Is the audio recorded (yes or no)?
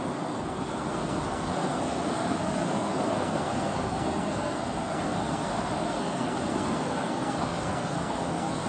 no